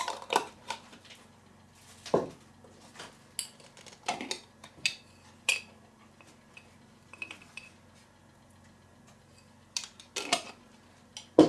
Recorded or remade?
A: recorded